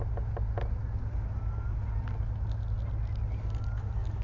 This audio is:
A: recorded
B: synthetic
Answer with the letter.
A